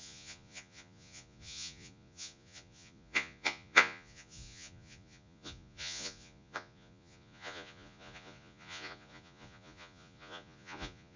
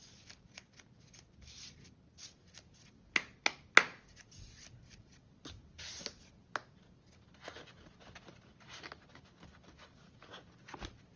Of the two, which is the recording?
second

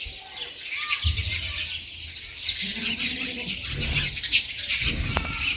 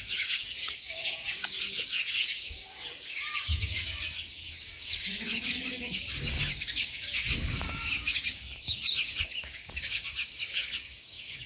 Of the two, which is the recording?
first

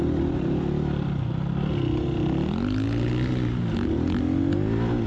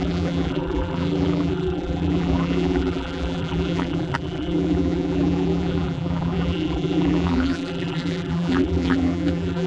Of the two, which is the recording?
first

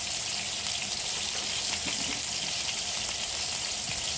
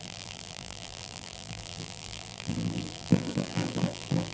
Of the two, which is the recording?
first